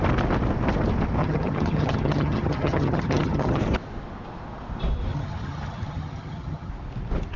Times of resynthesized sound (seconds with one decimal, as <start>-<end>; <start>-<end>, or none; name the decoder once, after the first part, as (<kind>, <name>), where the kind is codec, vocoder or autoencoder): 1.2-3.6 (vocoder, HiFi-GAN); 5.1-6.7